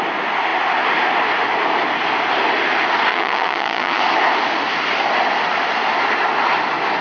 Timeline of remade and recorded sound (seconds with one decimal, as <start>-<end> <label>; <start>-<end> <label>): 0.0-3.1 recorded; 3.1-4.0 remade; 4.0-7.0 recorded